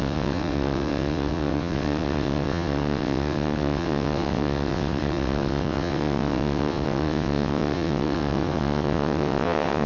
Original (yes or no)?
no